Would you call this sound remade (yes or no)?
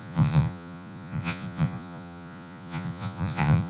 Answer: yes